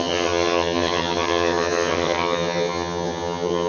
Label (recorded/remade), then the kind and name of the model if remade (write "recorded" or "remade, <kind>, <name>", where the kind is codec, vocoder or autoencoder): remade, vocoder, HiFi-GAN